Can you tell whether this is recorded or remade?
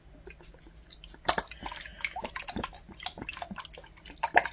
recorded